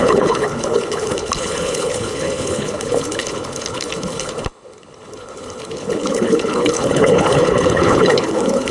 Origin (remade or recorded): remade